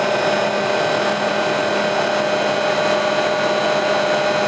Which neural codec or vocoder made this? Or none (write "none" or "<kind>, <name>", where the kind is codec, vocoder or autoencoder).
none